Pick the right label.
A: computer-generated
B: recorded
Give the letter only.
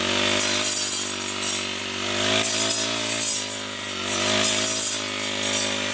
B